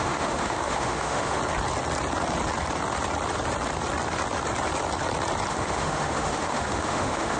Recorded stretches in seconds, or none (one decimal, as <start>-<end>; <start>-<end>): 1.4-5.5